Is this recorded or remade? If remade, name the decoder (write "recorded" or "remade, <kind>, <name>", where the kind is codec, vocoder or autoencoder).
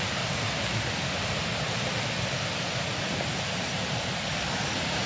recorded